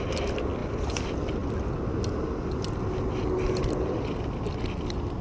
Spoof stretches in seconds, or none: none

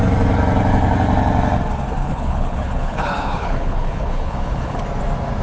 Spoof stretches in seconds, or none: 2.0-4.8 (codec, HILCodec)